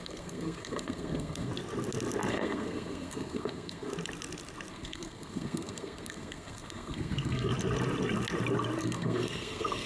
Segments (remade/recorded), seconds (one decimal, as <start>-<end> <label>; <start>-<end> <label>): 0.0-1.5 remade; 1.5-2.3 recorded; 2.3-3.9 remade; 3.9-4.7 recorded; 4.7-7.5 remade; 7.5-8.8 recorded; 8.8-9.9 remade